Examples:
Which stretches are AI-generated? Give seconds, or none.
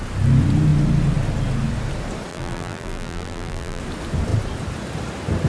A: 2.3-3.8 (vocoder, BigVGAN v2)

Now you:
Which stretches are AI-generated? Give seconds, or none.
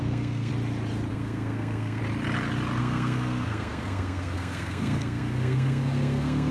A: 0.0-0.5 (codec, SNAC); 1.1-2.0; 2.8-6.5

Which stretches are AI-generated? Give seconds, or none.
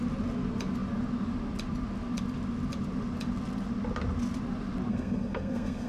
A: 4.9-5.9 (codec, SNAC)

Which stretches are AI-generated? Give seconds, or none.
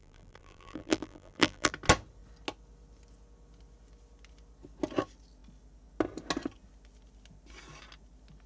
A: 0.0-1.7 (vocoder, BigVGAN v2)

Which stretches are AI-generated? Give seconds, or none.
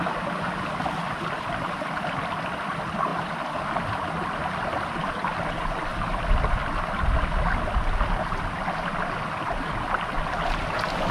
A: none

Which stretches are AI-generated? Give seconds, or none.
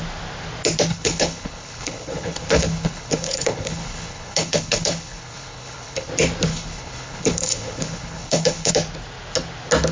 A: 0.9-6.1 (codec, HILCodec); 6.5-8.7